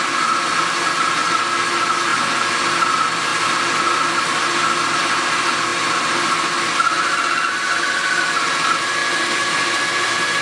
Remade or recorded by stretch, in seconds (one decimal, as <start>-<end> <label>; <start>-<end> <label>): 0.0-2.1 recorded; 2.1-2.9 remade; 2.9-3.3 recorded; 3.3-4.1 remade; 4.1-9.0 recorded; 9.0-10.4 remade

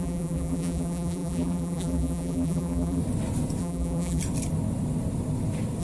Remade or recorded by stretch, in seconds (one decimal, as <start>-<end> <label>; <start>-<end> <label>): 0.0-3.0 remade; 3.0-3.6 recorded; 3.6-4.2 remade; 4.2-5.8 recorded